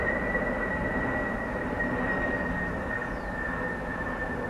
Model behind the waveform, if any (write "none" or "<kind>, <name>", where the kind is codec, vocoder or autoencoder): vocoder, BigVGAN v2